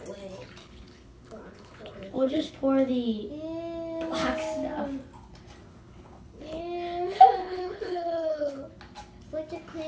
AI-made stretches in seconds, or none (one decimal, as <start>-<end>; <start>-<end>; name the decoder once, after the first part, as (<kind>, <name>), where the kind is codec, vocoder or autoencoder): 0.6-2.5 (codec, HILCodec); 5.7-6.6; 7.4-8.6